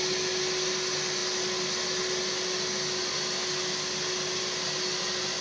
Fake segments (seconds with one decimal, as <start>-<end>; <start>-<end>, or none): none